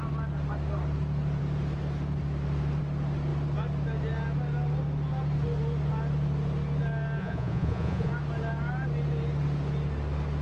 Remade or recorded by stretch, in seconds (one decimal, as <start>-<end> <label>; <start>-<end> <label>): 0.0-7.2 recorded; 7.2-8.1 remade; 8.1-10.4 recorded